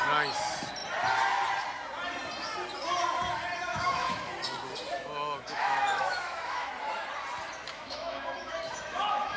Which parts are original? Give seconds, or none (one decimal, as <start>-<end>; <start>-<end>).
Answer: 0.0-3.7; 4.3-4.9; 6.7-7.7